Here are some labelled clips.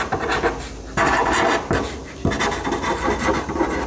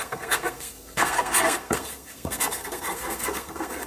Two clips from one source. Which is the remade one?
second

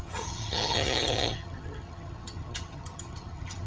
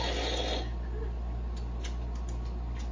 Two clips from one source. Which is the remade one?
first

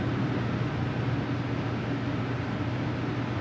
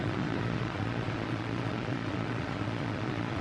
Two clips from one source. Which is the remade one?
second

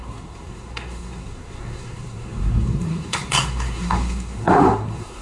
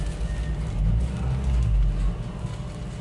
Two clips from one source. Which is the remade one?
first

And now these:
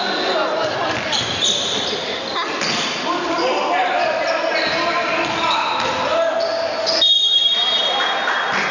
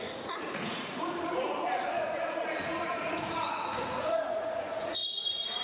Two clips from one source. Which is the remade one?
second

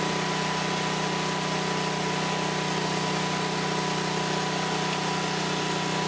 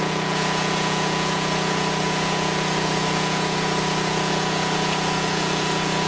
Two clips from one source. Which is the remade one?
second